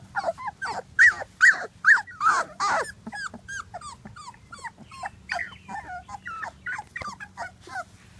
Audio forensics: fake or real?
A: real